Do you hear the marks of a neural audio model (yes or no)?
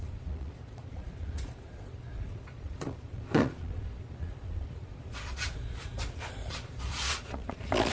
yes